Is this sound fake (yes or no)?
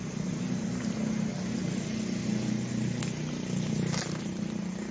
no